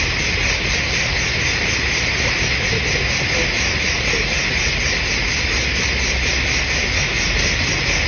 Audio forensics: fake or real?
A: real